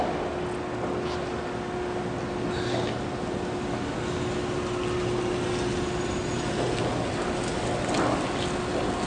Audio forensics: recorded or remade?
recorded